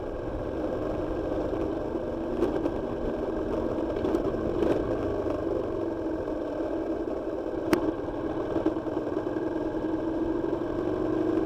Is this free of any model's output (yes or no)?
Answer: yes